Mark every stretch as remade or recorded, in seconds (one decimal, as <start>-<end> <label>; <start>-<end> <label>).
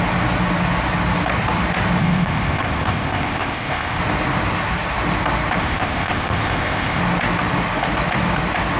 0.0-2.0 recorded; 2.0-4.0 remade; 4.0-5.6 recorded; 5.6-7.0 remade; 7.0-8.8 recorded